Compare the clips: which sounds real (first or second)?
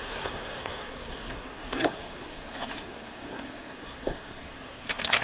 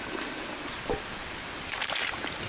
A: second